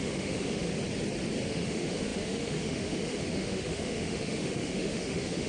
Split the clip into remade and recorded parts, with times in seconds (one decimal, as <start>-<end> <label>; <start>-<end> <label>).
0.0-0.7 remade; 0.7-1.5 recorded; 1.5-5.5 remade